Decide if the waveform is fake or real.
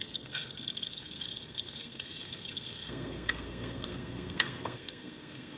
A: fake